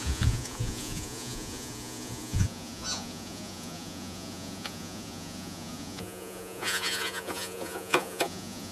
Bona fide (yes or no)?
no